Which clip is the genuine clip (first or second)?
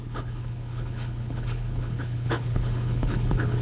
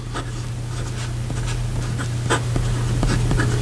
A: second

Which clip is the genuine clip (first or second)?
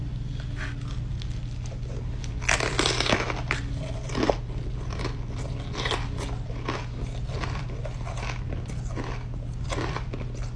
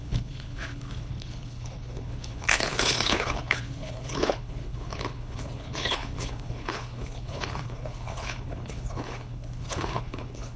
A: first